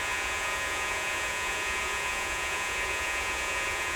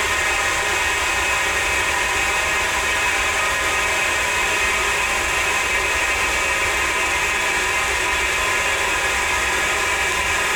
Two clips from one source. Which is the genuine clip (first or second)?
second